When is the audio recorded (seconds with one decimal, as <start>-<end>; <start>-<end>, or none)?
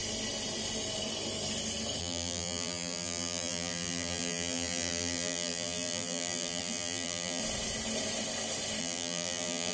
0.0-2.0; 7.4-8.8